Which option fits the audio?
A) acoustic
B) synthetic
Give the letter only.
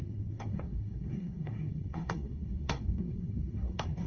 B